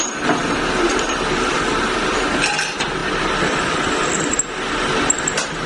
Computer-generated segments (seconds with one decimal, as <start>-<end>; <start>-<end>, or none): none